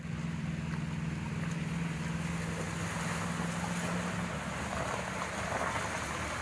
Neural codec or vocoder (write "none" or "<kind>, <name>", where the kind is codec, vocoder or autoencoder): none